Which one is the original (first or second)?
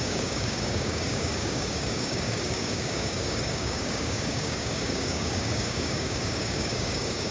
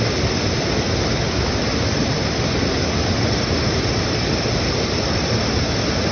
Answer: second